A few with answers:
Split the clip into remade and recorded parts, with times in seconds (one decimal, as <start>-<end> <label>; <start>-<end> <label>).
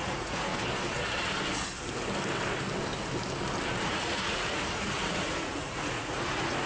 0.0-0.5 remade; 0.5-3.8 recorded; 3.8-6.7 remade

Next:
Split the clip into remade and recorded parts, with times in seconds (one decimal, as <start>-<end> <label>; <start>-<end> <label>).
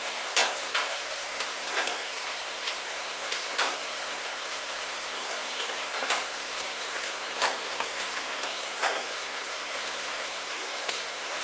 0.0-11.4 remade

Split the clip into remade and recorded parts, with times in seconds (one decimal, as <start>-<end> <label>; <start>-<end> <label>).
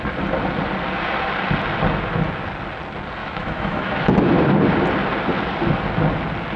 0.0-3.2 recorded; 3.2-4.3 remade; 4.3-6.6 recorded